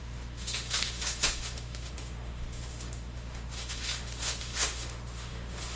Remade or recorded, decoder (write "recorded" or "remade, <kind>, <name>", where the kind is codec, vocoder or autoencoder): remade, autoencoder, DAC-VAE